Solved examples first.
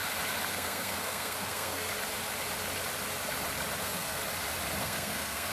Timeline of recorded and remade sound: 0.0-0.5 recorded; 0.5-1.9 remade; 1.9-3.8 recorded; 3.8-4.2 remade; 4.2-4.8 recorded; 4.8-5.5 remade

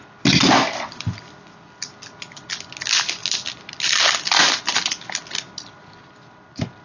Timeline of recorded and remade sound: 0.0-0.4 recorded; 0.4-1.4 remade; 1.4-6.8 recorded

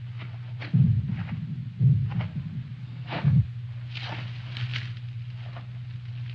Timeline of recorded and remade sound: 0.0-2.8 recorded; 2.8-3.4 remade; 3.4-6.3 recorded

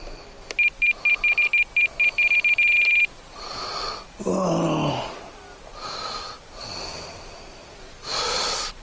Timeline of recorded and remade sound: 0.0-8.8 recorded